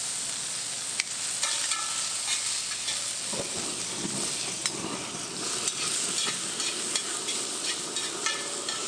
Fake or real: real